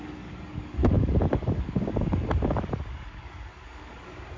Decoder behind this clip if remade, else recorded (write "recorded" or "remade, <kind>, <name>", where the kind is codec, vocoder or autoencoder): remade, codec, DAC